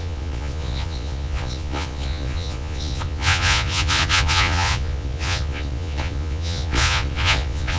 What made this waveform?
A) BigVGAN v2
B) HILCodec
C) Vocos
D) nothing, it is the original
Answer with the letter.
C